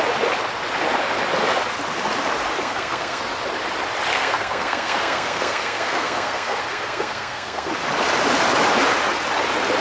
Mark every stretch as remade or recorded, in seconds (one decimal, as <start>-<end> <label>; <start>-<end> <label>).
0.0-2.6 recorded; 2.6-3.2 remade; 3.2-4.1 recorded; 4.1-7.7 remade; 7.7-9.8 recorded